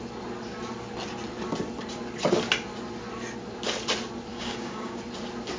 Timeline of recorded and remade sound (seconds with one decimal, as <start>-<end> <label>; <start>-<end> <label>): 0.0-4.3 recorded; 4.3-5.0 remade; 5.0-5.6 recorded